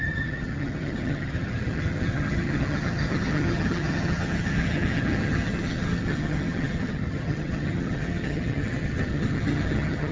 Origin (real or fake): fake